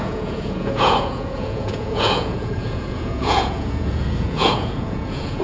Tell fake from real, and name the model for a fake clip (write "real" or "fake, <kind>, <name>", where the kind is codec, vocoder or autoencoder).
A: fake, vocoder, Vocos